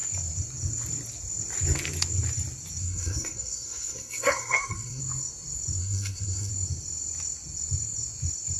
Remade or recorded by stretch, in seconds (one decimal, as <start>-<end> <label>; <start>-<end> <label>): 0.0-2.8 recorded; 2.8-5.0 remade; 5.0-5.8 recorded; 5.8-6.5 remade; 6.5-8.6 recorded